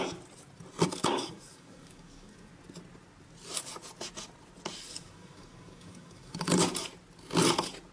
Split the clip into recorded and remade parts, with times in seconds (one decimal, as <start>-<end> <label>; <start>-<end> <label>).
0.0-1.0 recorded; 1.0-2.5 remade; 2.5-4.9 recorded; 4.9-6.6 remade; 6.6-7.9 recorded